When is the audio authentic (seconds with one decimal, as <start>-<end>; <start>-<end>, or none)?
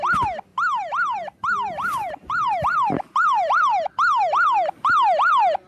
0.0-0.5; 3.9-5.7